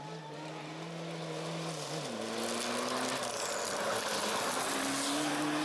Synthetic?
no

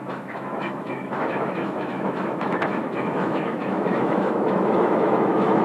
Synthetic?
yes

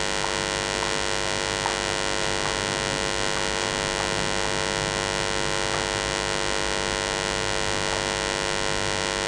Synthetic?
no